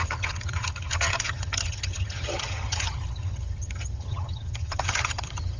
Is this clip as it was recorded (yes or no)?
no